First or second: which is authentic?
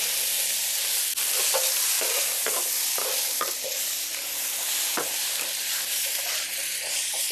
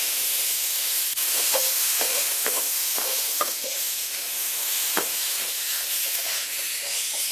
first